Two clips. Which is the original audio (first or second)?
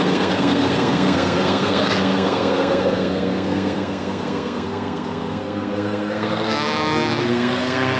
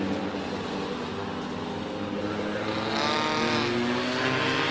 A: second